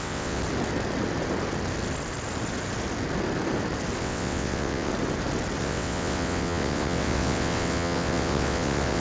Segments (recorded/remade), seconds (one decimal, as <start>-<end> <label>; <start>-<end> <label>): 0.0-0.4 remade; 0.4-4.0 recorded; 4.0-4.9 remade; 4.9-5.6 recorded; 5.6-9.0 remade

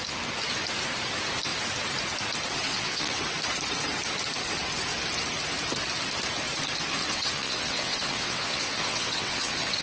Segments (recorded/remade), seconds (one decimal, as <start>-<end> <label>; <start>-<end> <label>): 0.0-2.7 recorded; 2.7-3.2 remade; 3.2-7.0 recorded; 7.0-9.8 remade

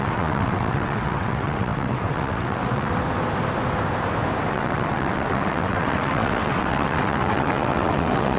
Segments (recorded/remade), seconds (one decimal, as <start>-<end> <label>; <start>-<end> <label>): 0.0-2.9 remade; 2.9-4.5 recorded; 4.5-8.4 remade

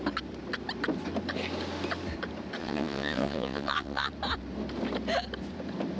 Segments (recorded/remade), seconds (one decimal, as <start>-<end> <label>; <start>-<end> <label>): 0.0-2.6 recorded; 2.6-4.1 remade; 4.1-6.0 recorded